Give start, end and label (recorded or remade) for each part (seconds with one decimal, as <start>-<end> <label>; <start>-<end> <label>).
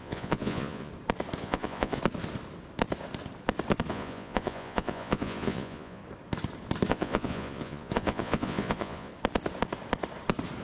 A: 0.0-0.9 remade; 0.9-1.4 recorded; 1.4-2.0 remade; 2.0-3.9 recorded; 3.9-6.0 remade; 6.0-6.9 recorded; 6.9-9.1 remade; 9.1-10.6 recorded